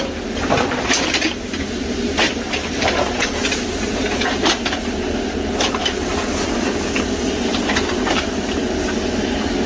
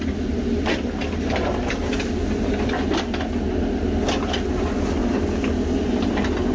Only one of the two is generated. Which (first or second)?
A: first